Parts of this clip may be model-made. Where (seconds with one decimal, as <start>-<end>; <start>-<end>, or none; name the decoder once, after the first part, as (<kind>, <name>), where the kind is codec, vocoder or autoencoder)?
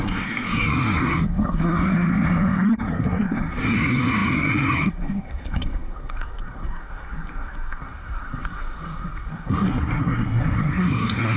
0.0-11.4 (codec, SNAC)